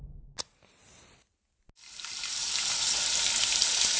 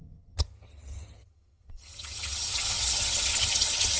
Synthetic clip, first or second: second